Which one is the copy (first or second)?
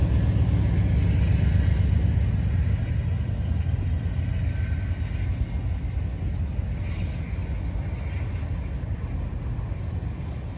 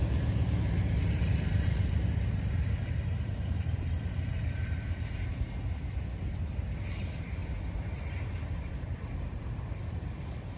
second